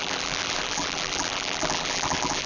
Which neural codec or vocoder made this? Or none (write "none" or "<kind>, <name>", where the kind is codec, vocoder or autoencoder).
vocoder, BigVGAN v2